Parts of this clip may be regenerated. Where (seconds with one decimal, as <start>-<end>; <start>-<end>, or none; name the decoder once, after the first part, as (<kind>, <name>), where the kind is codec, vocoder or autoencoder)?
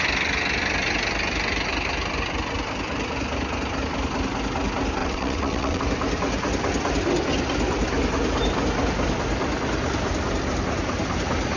5.0-5.8 (vocoder, WaveNeXt)